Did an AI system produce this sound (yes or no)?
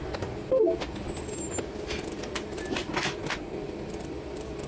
no